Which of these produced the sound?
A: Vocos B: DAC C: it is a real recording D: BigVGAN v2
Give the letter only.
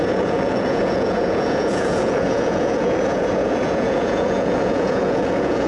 A